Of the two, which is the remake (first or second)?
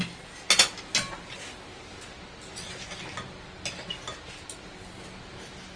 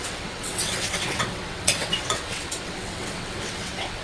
second